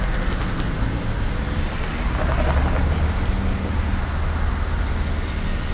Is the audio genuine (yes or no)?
yes